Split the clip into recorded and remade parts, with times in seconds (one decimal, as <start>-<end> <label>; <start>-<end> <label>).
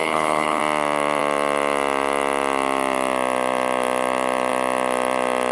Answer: 0.0-0.6 remade; 0.6-5.5 recorded